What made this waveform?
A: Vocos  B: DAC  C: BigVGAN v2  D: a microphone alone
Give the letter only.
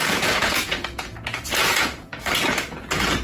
A